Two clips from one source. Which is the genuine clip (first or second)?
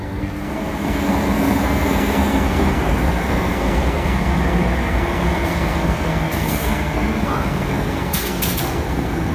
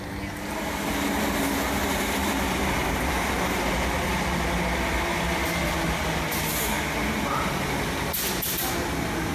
second